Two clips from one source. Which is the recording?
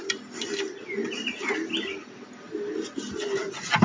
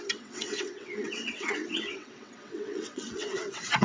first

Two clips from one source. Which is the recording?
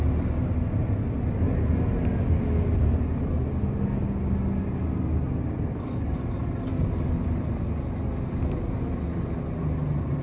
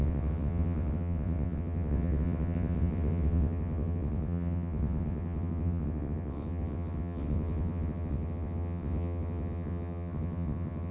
first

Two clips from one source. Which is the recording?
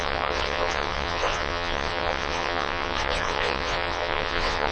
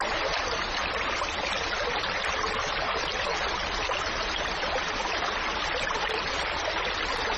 second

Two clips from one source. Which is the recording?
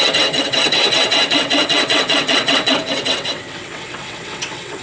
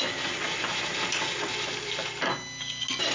second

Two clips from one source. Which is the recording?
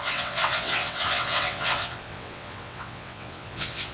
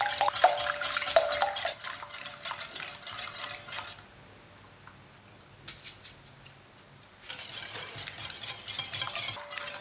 second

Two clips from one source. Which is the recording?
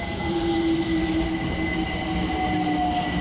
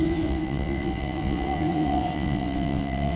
first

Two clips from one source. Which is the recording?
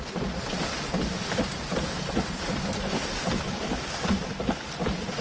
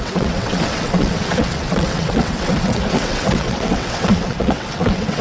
first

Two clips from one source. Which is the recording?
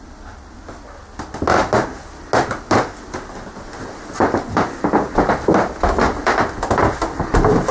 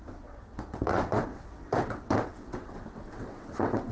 first